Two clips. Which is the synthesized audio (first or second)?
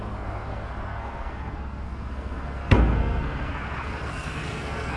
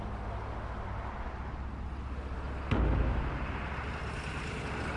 first